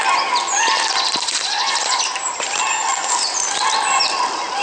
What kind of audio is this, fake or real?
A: fake